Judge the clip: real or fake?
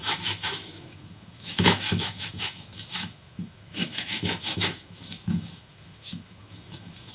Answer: fake